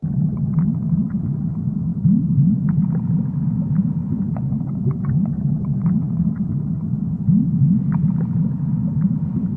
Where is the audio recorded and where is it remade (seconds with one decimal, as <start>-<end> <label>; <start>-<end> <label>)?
0.0-4.0 recorded; 4.0-6.3 remade; 6.3-9.6 recorded